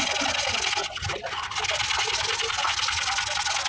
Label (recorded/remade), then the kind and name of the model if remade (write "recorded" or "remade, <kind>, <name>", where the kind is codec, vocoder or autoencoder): recorded